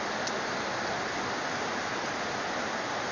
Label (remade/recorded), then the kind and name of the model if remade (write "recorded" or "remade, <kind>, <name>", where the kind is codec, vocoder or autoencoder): recorded